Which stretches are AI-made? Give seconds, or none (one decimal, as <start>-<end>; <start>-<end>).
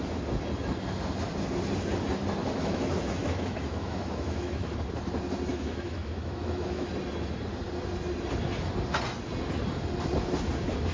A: 2.4-4.7; 5.5-6.9